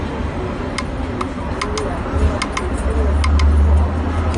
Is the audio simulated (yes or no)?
no